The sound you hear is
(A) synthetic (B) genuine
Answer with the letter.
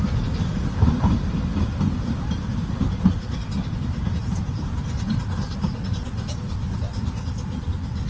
B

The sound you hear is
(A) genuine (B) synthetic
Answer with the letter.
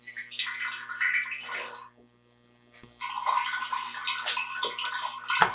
A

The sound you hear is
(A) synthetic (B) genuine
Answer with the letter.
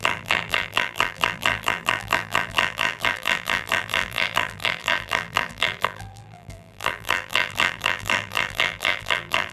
A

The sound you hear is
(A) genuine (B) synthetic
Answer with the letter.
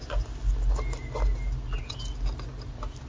A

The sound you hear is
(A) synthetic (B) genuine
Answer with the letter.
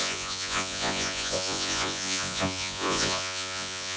A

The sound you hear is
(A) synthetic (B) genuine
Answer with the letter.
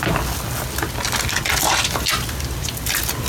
B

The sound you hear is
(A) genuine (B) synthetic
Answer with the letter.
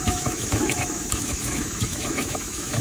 B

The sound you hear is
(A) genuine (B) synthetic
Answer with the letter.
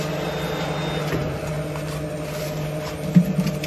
A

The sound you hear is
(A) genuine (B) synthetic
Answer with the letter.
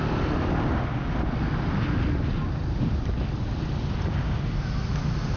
A